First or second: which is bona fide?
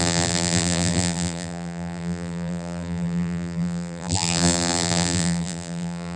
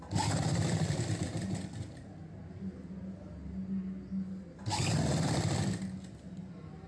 second